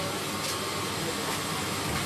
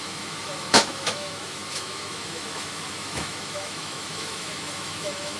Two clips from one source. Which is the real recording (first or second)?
first